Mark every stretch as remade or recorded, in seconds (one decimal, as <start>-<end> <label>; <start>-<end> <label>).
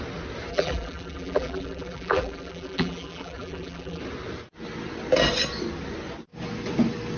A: 0.0-0.5 recorded; 0.5-4.0 remade; 4.0-7.2 recorded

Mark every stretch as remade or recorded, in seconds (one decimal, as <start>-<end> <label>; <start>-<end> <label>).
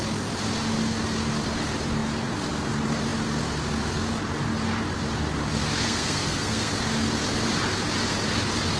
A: 0.0-5.8 recorded; 5.8-6.7 remade; 6.7-8.8 recorded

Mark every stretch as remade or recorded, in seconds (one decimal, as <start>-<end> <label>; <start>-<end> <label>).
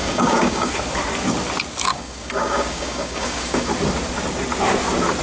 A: 0.0-0.7 remade; 0.7-1.9 recorded; 1.9-3.7 remade; 3.7-5.2 recorded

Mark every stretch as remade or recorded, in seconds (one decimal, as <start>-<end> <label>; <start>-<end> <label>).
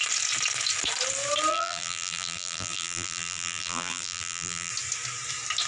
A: 0.0-1.5 recorded; 1.5-4.7 remade; 4.7-5.7 recorded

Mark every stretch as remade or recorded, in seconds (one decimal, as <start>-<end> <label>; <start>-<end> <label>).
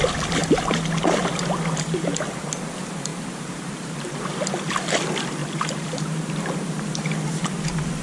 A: 0.0-3.1 recorded; 3.1-4.2 remade; 4.2-5.4 recorded; 5.4-6.3 remade; 6.3-8.0 recorded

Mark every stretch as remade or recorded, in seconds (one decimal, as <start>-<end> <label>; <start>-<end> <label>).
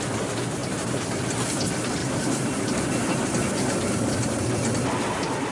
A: 0.0-0.6 recorded; 0.6-1.2 remade; 1.2-2.0 recorded; 2.0-4.4 remade; 4.4-5.5 recorded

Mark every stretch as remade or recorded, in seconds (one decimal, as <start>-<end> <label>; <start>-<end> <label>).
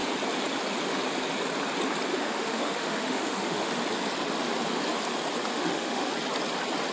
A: 0.0-2.1 recorded; 2.1-3.7 remade; 3.7-5.5 recorded; 5.5-6.1 remade; 6.1-6.9 recorded